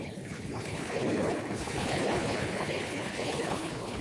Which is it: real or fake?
fake